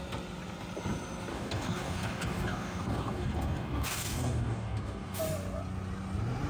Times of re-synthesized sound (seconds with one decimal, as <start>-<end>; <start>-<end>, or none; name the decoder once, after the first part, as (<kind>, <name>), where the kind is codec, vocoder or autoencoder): 1.3-5.2 (codec, DAC)